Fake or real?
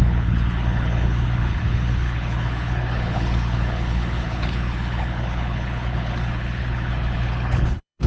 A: fake